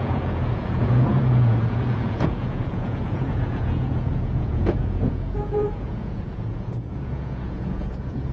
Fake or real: fake